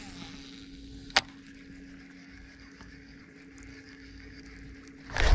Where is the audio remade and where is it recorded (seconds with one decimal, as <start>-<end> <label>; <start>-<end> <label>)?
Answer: 0.0-2.2 recorded; 2.2-3.2 remade; 3.2-3.7 recorded; 3.7-4.4 remade; 4.4-5.3 recorded